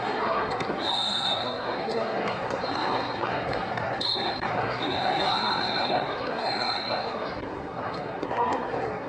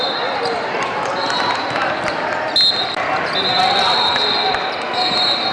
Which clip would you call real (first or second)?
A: second